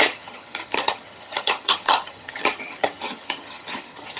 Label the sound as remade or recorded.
remade